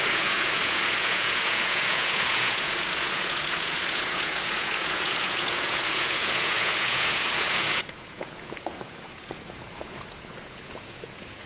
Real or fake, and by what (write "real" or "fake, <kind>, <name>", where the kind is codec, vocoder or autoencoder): fake, vocoder, Vocos